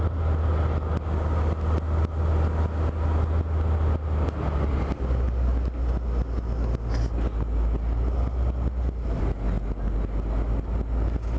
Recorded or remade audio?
recorded